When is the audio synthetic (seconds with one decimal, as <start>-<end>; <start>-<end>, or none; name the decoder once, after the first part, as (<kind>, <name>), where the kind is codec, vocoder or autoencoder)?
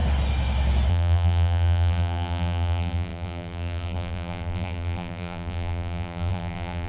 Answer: 0.9-6.9 (vocoder, BigVGAN v2)